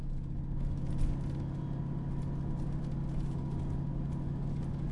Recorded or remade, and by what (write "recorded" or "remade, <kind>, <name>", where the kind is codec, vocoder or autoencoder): recorded